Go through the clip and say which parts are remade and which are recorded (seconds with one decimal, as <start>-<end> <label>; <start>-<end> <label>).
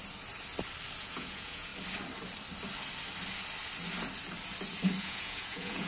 0.0-1.0 recorded; 1.0-1.7 remade; 1.7-5.0 recorded; 5.0-5.9 remade